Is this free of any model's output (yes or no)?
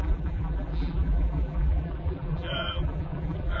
no